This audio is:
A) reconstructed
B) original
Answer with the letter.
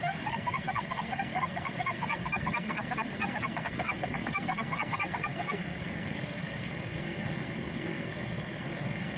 A